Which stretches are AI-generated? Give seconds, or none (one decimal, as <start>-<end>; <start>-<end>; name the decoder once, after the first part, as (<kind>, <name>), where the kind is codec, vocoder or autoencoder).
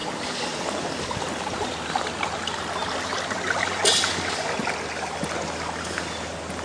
none